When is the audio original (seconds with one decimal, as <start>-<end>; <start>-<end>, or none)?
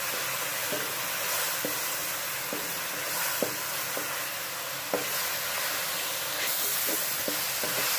0.0-8.0